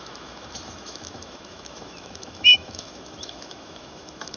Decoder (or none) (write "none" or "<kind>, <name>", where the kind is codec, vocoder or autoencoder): autoencoder, DAC-VAE